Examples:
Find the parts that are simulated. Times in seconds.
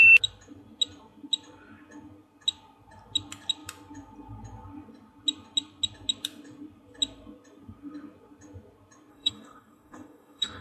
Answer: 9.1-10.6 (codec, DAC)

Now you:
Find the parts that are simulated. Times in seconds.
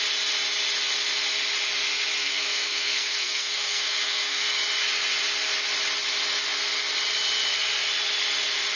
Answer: 2.2-4.5 (codec, SNAC)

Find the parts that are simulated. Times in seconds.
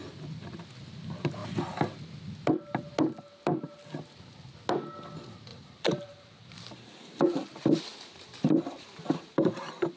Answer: 5.5-10.0 (vocoder, BigVGAN v2)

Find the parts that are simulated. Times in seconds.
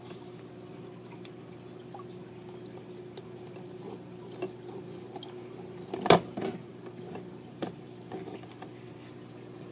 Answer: none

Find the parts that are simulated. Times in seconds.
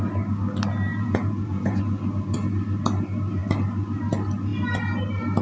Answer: 0.9-1.8 (vocoder, Vocos)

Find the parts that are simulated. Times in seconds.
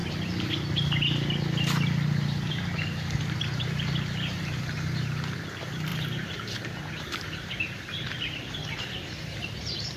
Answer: 2.5-10.0 (vocoder, BigVGAN v2)